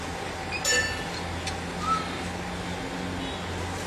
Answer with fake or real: real